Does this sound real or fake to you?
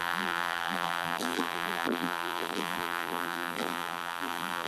fake